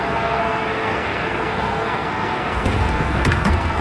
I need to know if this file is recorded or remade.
remade